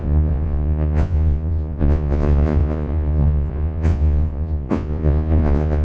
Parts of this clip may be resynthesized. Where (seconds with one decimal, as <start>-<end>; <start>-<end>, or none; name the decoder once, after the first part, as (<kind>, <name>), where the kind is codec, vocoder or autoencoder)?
0.0-5.8 (vocoder, Vocos)